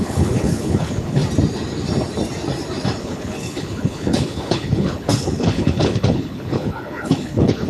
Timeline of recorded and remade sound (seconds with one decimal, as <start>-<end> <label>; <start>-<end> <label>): 0.0-1.2 remade; 1.2-3.0 recorded; 3.0-7.7 remade